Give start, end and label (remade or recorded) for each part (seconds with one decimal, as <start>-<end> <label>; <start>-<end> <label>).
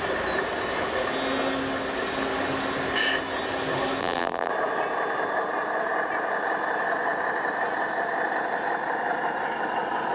0.0-4.0 recorded; 4.0-4.5 remade; 4.5-10.1 recorded